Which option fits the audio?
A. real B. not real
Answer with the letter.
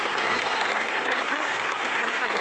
B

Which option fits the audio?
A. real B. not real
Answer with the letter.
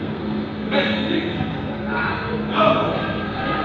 B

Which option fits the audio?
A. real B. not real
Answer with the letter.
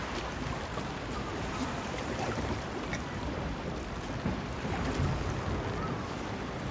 A